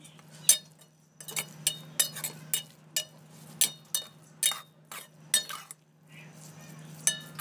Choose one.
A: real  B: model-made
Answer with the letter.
A